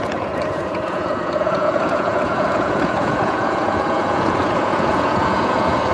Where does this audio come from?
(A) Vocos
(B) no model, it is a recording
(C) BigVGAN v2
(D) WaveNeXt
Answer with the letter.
A